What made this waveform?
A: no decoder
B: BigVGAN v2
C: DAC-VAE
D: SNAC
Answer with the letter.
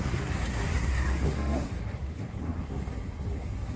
D